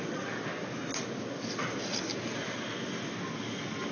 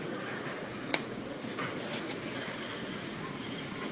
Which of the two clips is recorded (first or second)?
first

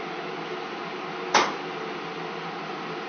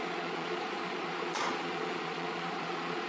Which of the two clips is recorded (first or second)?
first